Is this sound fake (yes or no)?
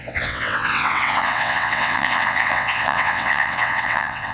yes